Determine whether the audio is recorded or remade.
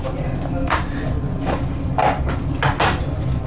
recorded